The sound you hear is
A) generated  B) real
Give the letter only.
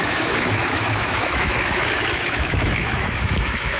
A